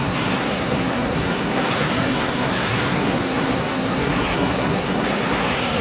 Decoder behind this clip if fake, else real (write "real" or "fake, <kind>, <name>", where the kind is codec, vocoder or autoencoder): fake, codec, SNAC